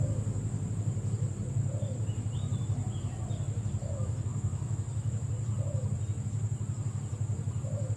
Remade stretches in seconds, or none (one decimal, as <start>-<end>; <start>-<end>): 4.3-5.2